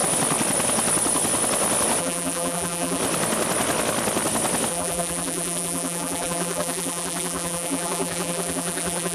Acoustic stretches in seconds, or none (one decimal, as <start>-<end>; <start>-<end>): 0.0-2.0; 3.0-4.7